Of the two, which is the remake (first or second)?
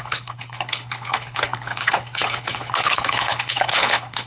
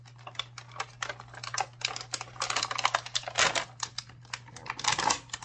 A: first